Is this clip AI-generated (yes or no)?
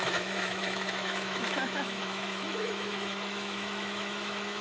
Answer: yes